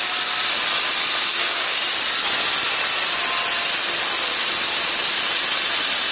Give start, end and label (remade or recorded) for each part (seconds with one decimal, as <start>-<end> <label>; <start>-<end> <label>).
0.0-1.3 recorded; 1.3-1.8 remade; 1.8-6.1 recorded